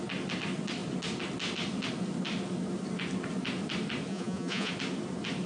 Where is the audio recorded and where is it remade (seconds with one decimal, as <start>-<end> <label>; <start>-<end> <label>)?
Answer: 0.0-4.1 recorded; 4.1-4.7 remade; 4.7-5.5 recorded